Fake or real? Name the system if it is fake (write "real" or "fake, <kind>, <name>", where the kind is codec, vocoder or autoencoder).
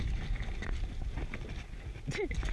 real